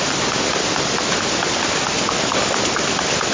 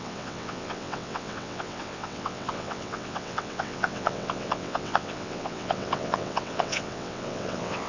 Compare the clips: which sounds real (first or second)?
first